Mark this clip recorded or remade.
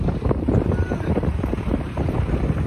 recorded